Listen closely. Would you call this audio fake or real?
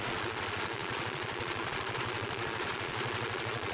fake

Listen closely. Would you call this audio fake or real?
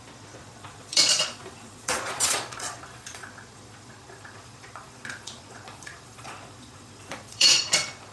fake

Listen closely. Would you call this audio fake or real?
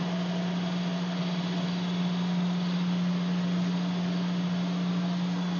real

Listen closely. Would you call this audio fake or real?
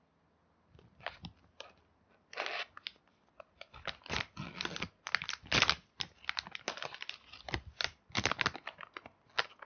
real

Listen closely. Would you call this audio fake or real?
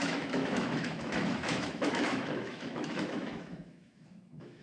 fake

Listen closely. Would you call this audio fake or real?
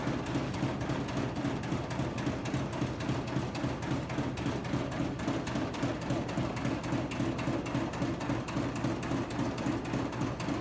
real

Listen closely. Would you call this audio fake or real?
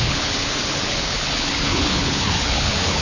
fake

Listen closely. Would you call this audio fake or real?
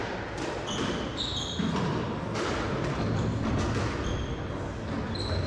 real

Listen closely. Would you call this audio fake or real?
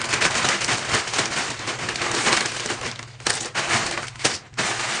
real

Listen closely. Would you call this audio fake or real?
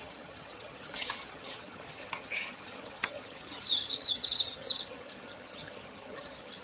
fake